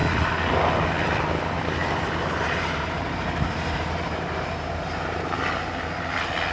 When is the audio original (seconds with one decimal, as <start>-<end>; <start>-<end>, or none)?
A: 0.0-1.8; 5.5-6.5